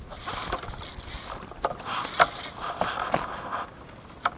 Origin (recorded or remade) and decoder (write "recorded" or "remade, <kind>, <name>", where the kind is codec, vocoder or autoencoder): recorded